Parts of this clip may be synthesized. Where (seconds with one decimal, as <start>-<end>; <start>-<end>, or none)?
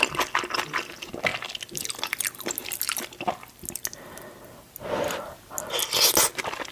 none